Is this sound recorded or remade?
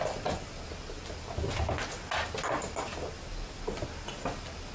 recorded